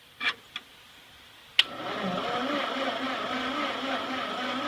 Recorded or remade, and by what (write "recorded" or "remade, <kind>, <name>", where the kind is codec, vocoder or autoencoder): recorded